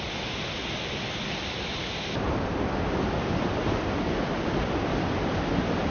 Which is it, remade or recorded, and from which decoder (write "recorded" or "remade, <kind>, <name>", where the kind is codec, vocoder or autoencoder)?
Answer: recorded